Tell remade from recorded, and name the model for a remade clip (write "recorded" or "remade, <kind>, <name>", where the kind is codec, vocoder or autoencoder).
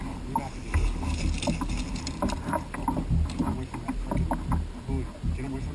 recorded